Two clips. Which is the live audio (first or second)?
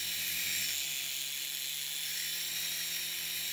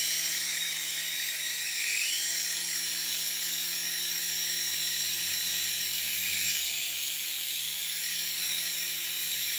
first